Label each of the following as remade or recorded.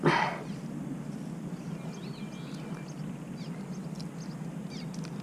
recorded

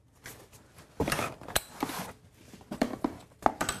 recorded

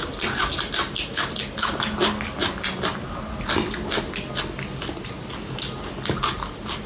recorded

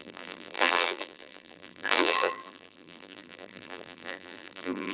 remade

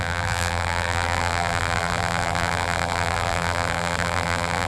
remade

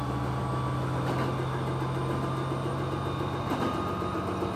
recorded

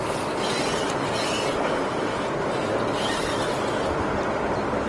recorded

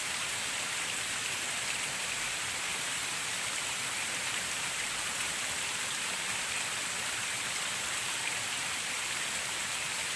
remade